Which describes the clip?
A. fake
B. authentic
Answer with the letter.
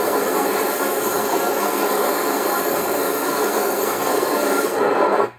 A